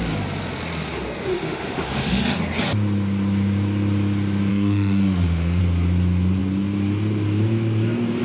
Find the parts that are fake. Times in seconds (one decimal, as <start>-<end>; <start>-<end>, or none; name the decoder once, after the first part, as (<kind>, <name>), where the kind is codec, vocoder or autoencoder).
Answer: 1.3-2.2 (autoencoder, DAC-VAE); 4.5-5.6